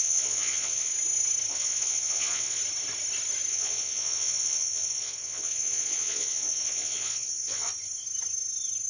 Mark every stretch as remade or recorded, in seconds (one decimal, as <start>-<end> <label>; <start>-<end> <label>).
0.0-0.9 remade; 0.9-1.5 recorded; 1.5-2.6 remade; 2.6-3.5 recorded; 3.5-7.7 remade; 7.7-8.9 recorded